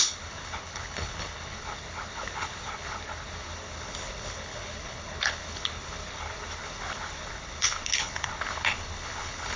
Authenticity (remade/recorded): remade